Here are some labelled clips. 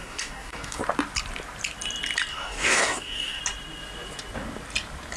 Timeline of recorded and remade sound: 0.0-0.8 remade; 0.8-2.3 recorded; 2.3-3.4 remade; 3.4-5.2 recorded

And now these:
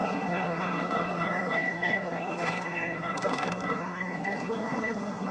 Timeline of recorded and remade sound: 0.0-5.3 remade

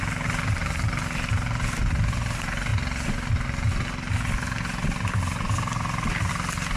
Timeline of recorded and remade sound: 0.0-6.8 recorded

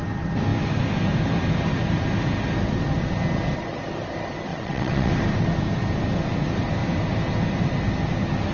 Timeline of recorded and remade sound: 0.0-4.5 recorded; 4.5-5.1 remade; 5.1-8.5 recorded

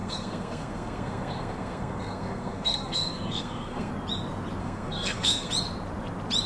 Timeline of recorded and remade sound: 0.0-3.9 remade; 3.9-4.6 recorded; 4.6-5.5 remade; 5.5-6.5 recorded